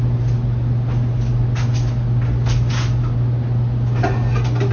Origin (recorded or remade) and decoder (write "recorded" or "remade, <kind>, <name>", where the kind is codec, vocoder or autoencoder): recorded